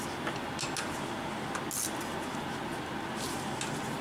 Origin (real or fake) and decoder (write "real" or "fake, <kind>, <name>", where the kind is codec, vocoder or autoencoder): real